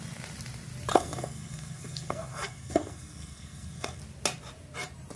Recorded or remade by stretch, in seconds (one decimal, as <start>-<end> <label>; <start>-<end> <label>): 0.0-0.9 recorded; 0.9-4.0 remade; 4.0-5.2 recorded